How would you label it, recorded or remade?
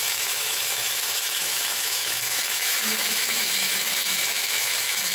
remade